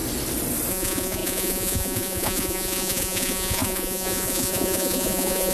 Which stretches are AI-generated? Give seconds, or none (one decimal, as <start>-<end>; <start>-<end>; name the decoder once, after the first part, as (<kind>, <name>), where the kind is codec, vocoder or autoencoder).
0.7-5.5 (vocoder, Vocos)